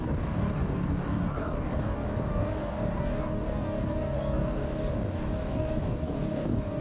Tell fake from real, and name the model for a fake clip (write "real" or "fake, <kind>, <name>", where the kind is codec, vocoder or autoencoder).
fake, codec, DAC